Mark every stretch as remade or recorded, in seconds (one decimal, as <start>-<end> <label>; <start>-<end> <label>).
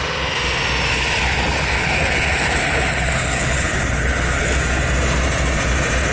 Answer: 0.0-0.9 recorded; 0.9-4.6 remade; 4.6-6.1 recorded